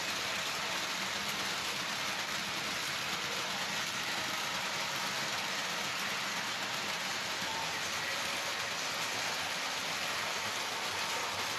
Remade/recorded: recorded